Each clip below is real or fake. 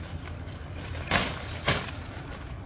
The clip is real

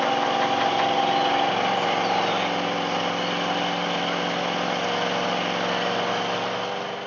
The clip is real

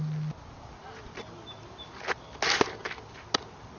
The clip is real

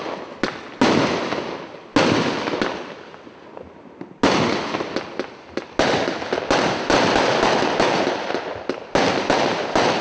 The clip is real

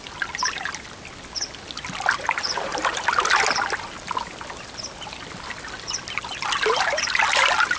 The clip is real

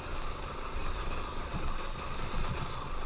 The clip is real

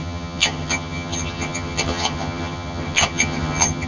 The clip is fake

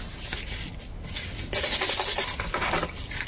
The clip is real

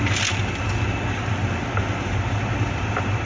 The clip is real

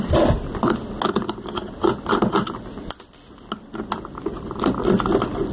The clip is real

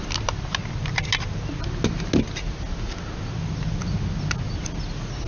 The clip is real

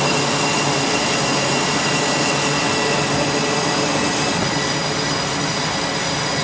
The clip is real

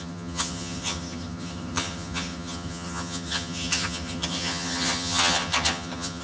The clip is fake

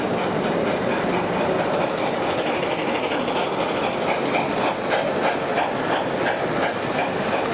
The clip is real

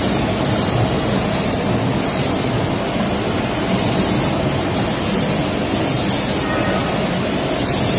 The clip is real